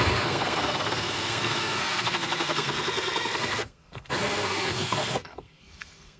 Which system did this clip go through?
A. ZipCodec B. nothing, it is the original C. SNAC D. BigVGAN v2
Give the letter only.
C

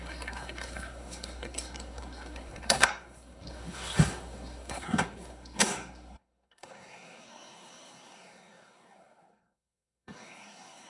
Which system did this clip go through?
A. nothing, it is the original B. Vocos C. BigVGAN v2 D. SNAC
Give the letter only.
D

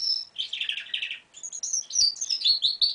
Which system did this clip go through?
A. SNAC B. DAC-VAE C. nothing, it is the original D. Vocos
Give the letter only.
C